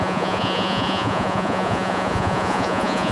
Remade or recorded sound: remade